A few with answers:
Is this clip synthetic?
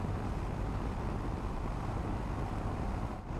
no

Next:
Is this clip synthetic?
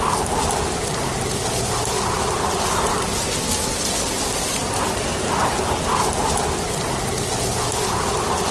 no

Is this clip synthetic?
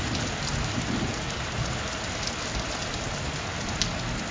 no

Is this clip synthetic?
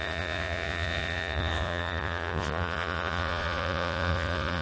yes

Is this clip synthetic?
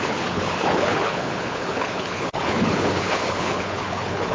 yes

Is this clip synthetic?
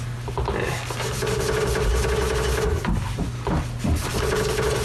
no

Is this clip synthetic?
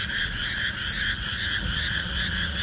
yes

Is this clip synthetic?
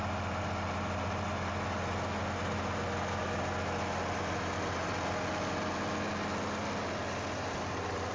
no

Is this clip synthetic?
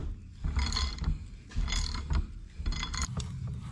no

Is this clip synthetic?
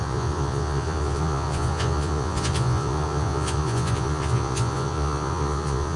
yes